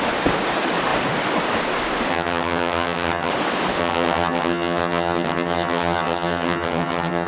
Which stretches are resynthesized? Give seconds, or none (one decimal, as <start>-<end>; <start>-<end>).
2.1-3.3; 3.8-7.3